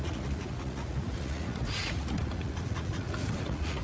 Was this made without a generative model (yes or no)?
no